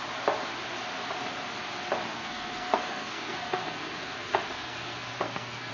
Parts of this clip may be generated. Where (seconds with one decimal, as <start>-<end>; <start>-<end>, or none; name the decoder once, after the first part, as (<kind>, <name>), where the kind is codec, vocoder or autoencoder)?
2.1-5.7 (codec, SNAC)